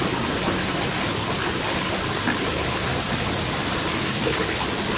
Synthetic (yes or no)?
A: no